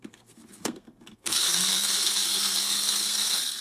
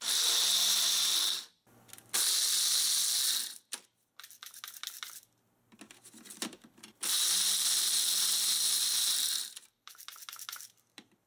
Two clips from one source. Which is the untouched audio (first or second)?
second